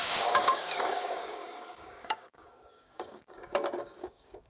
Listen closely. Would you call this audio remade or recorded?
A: remade